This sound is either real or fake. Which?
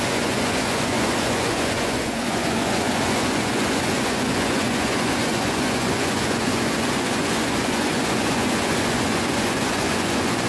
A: fake